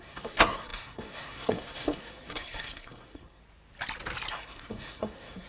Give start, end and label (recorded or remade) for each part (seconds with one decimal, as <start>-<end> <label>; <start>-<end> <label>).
0.0-3.4 remade; 3.4-4.3 recorded; 4.3-5.5 remade